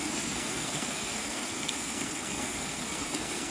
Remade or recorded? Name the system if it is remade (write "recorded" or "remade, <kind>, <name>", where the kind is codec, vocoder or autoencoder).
remade, codec, SNAC